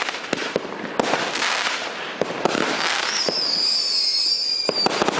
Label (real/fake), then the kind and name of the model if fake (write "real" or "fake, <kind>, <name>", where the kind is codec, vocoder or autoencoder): real